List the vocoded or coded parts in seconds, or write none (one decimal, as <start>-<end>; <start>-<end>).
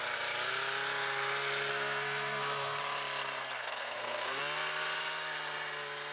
1.7-2.8; 3.4-4.4